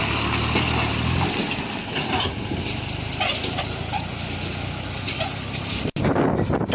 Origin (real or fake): real